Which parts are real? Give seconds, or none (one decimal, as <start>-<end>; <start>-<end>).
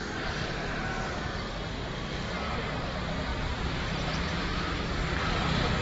1.3-2.8; 3.3-3.9; 4.5-5.8